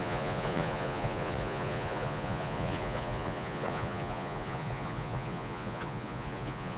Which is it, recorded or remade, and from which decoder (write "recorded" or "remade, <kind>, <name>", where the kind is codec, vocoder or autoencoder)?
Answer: remade, vocoder, Vocos